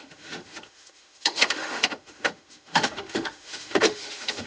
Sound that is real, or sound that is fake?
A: fake